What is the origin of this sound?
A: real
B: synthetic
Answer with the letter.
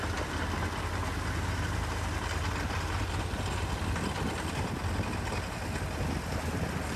A